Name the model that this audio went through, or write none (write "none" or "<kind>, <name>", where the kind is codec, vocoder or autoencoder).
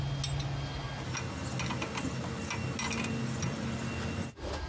none